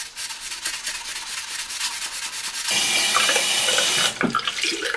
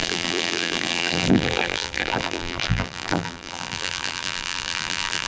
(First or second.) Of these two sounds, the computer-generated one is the second